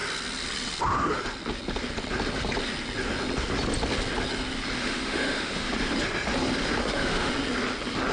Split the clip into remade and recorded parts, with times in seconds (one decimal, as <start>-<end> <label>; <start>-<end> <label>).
0.0-4.8 recorded; 4.8-5.7 remade; 5.7-6.8 recorded; 6.8-7.3 remade; 7.3-8.1 recorded